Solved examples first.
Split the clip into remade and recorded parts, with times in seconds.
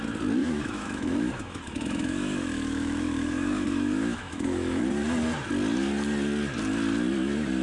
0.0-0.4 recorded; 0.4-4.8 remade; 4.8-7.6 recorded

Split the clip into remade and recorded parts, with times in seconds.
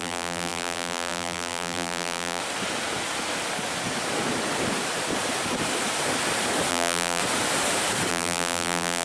0.0-2.4 remade; 2.4-6.7 recorded; 6.7-7.2 remade; 7.2-8.1 recorded; 8.1-9.0 remade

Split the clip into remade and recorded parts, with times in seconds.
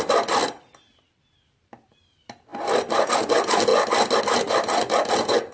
0.0-0.4 recorded; 0.4-1.2 remade; 1.2-3.7 recorded; 3.7-4.2 remade; 4.2-5.5 recorded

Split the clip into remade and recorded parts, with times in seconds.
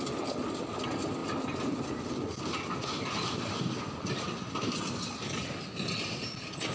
0.0-6.7 recorded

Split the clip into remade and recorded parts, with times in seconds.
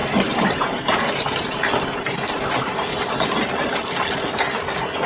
0.0-3.1 remade; 3.1-5.1 recorded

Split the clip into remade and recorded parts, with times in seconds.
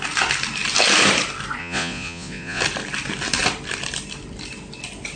0.0-1.6 recorded; 1.6-2.6 remade; 2.6-5.2 recorded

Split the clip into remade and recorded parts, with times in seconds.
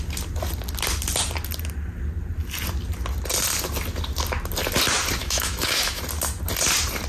0.0-5.2 recorded; 5.2-6.0 remade; 6.0-7.1 recorded